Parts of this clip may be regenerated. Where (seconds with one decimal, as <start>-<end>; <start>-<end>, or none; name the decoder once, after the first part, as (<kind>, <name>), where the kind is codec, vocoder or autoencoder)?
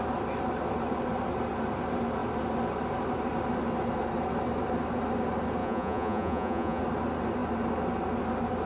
5.6-6.8 (vocoder, Vocos)